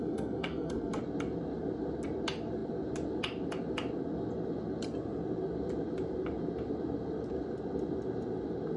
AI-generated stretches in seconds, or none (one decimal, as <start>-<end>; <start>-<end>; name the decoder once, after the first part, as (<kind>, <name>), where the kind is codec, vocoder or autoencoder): 0.0-1.0 (codec, SNAC)